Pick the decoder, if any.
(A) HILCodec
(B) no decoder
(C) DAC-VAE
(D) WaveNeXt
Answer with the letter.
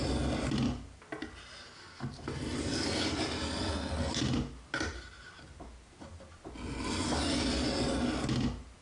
B